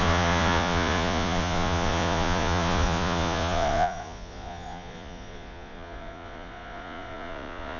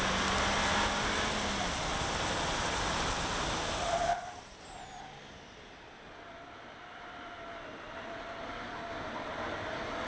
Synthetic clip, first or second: first